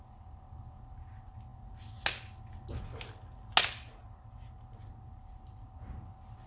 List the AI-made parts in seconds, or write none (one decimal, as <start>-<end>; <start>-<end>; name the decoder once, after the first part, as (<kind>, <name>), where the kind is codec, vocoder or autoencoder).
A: none